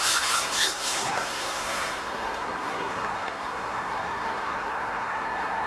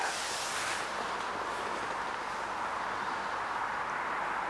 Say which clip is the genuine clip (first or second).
second